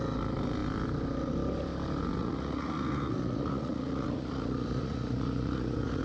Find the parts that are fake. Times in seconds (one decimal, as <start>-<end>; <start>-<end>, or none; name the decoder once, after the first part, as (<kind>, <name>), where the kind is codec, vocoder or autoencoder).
2.2-6.0 (vocoder, Vocos)